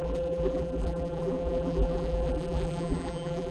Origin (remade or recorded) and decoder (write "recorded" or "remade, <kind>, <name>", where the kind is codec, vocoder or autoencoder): remade, vocoder, BigVGAN v2